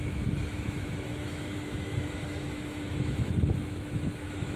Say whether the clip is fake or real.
fake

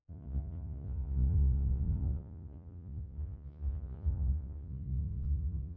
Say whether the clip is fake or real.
fake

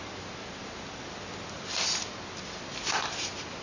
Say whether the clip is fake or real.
real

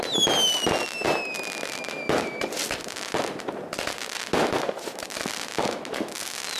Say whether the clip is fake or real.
real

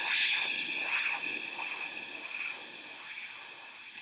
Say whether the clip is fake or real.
real